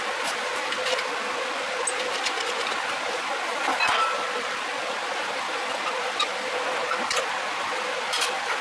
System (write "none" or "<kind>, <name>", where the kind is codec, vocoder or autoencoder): none